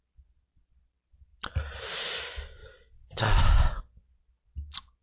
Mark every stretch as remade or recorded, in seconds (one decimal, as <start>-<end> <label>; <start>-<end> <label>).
0.0-5.0 recorded